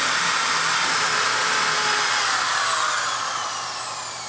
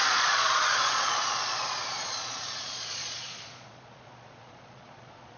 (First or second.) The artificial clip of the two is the second